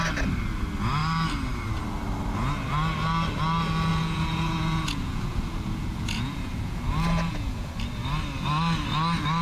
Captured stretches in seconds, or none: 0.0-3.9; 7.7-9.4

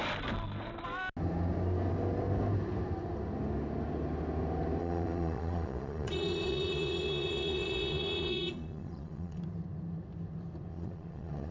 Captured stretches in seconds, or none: 0.0-4.8; 9.4-10.7

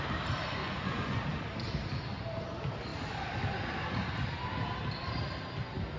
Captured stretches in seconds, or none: 0.0-0.6; 1.2-6.0